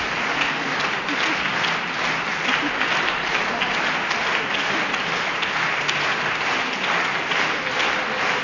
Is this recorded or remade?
recorded